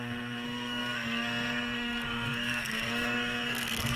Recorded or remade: remade